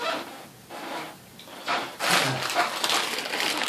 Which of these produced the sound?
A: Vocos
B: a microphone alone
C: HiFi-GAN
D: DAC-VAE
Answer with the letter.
B